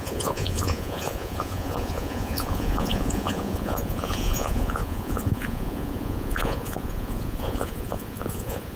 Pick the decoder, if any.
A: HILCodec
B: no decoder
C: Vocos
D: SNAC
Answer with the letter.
C